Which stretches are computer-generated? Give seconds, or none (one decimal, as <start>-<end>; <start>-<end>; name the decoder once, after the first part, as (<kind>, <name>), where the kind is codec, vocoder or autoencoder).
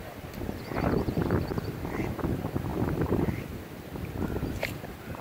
2.7-3.5 (vocoder, BigVGAN v2)